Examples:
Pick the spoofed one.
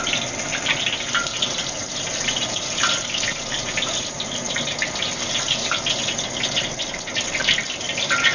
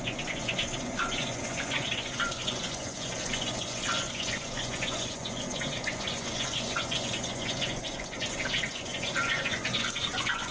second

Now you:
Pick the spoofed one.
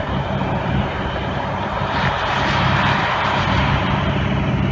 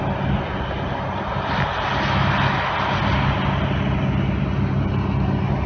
first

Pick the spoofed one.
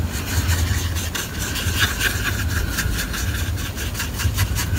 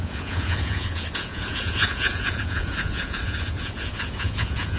second